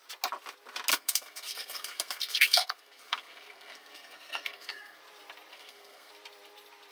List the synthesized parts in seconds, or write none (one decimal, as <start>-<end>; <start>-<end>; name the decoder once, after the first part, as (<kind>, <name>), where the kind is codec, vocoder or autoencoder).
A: 0.9-5.0 (codec, SNAC); 5.5-6.1